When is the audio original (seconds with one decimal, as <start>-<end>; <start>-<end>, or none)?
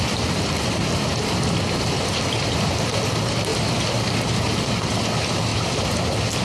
3.5-4.1